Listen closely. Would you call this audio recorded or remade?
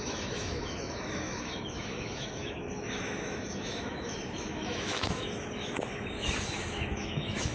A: remade